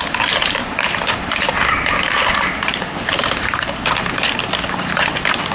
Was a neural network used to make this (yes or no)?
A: yes